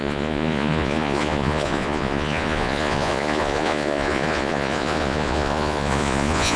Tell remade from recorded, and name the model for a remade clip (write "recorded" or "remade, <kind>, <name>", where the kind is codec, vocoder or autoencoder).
remade, vocoder, Vocos